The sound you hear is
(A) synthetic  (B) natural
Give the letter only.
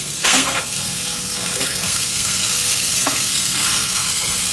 A